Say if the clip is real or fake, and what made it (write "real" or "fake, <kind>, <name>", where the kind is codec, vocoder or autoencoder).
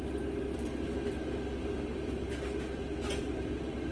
real